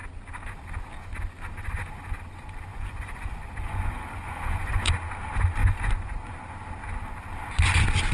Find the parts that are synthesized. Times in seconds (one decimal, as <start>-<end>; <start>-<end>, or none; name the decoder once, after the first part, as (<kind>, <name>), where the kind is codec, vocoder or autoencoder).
2.7-4.9 (vocoder, Vocos); 5.6-6.3